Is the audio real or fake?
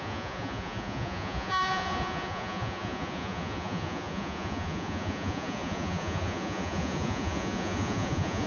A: fake